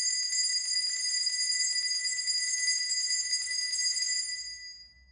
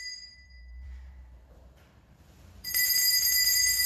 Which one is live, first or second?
first